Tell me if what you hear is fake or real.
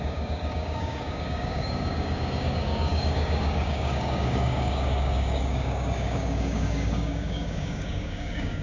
fake